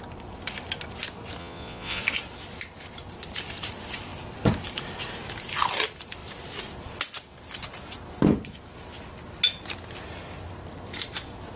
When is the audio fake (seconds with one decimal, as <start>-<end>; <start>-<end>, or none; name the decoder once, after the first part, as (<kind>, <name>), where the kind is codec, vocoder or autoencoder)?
1.4-2.0 (vocoder, Vocos)